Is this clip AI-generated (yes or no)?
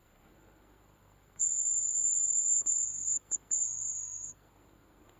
yes